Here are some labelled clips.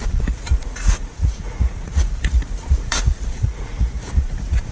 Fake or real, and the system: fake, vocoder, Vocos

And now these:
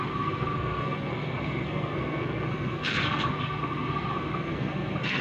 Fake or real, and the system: fake, codec, SNAC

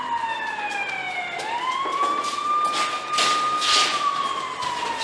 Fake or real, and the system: real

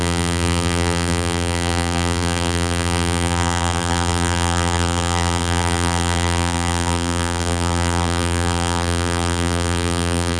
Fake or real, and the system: fake, vocoder, BigVGAN v2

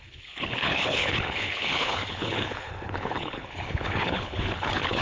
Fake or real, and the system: fake, codec, HILCodec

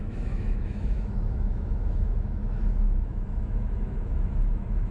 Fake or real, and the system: fake, autoencoder, DAC-VAE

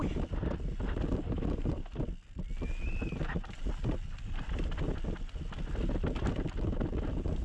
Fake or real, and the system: real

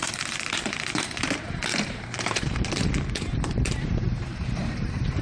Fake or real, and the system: fake, vocoder, BigVGAN v2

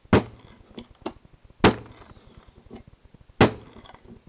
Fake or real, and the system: real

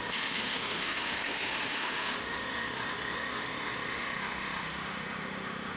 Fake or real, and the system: fake, autoencoder, DAC-VAE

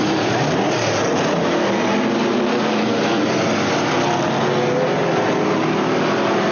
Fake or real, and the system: real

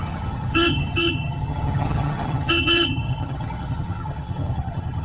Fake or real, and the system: fake, vocoder, HiFi-GAN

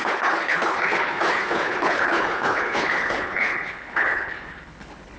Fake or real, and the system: fake, codec, HILCodec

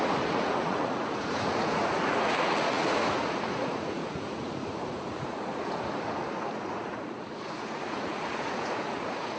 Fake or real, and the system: fake, vocoder, Vocos